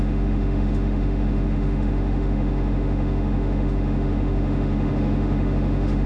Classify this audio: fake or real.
fake